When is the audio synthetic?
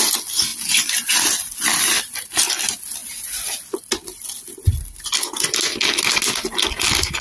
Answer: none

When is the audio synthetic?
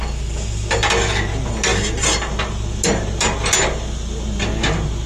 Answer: none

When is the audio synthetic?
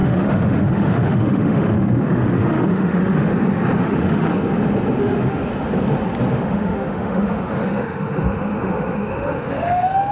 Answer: 0.0-3.3; 3.8-4.3; 5.0-5.5; 6.3-10.1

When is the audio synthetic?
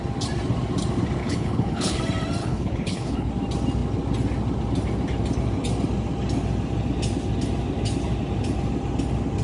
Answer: 1.2-2.0; 2.4-3.3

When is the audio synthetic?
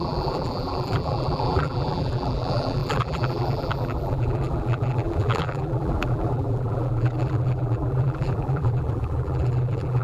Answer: 0.0-10.0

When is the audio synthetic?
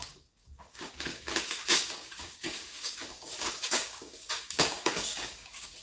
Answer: 0.0-5.8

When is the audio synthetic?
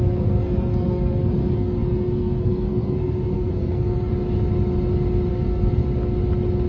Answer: 0.0-4.1; 5.3-5.8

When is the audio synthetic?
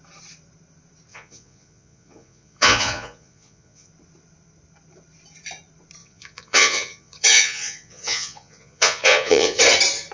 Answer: 1.1-3.9; 6.0-9.6